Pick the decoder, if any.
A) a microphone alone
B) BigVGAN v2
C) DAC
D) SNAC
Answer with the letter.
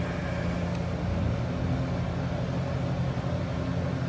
A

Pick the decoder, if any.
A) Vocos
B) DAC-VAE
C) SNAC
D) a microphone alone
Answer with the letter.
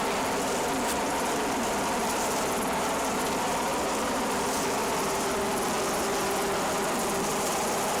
D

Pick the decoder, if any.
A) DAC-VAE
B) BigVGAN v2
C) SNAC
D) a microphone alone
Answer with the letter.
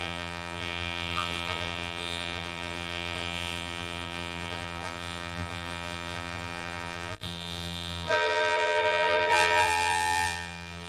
B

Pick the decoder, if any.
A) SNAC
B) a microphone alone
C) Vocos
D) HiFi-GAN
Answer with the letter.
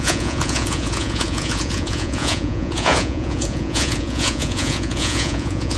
C